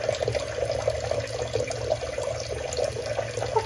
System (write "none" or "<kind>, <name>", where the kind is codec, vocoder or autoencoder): none